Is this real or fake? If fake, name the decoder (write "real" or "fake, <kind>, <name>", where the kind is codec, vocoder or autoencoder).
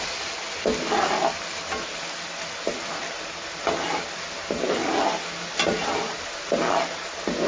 real